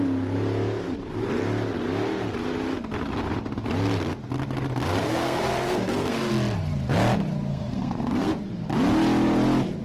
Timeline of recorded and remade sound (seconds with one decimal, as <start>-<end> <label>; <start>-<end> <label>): 0.0-5.0 recorded; 5.0-6.3 remade; 6.3-7.5 recorded; 7.5-8.3 remade; 8.3-9.8 recorded